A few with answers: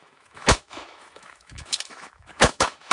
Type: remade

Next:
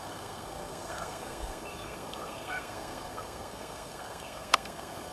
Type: remade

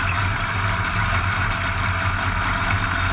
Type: recorded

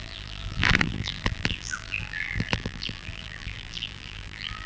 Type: remade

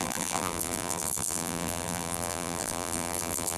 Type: remade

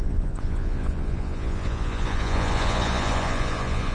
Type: remade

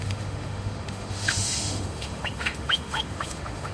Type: remade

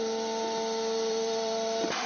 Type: remade